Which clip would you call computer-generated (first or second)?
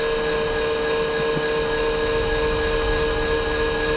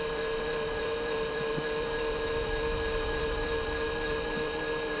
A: second